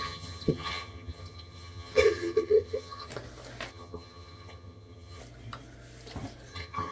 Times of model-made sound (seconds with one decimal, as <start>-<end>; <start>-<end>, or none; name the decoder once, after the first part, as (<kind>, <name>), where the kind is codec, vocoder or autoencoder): 0.0-3.1 (vocoder, HiFi-GAN); 3.7-5.2; 6.5-6.9